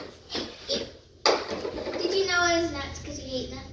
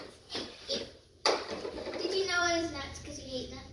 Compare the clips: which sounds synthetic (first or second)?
second